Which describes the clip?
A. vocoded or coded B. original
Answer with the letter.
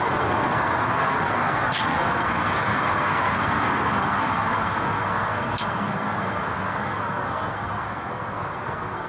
A